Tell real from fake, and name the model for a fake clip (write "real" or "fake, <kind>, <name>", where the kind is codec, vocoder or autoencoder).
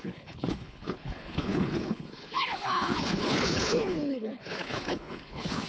fake, codec, HILCodec